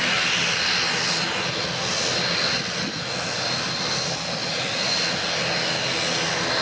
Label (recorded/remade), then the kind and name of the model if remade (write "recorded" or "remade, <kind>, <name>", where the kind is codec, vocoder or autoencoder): recorded